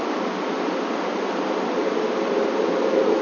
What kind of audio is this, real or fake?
fake